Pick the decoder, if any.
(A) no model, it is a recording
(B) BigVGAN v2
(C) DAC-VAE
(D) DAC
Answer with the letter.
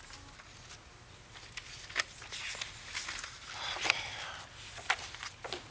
A